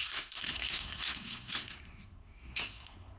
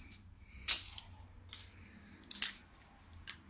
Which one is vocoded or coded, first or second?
first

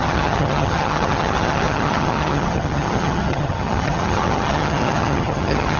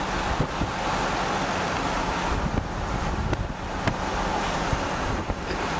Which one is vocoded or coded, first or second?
first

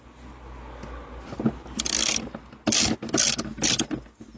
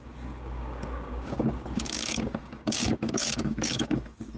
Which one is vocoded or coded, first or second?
second